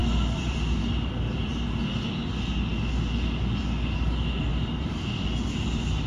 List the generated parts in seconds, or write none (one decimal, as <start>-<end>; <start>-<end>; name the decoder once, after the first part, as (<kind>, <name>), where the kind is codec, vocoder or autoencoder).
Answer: 0.0-1.4 (vocoder, BigVGAN v2); 4.5-6.1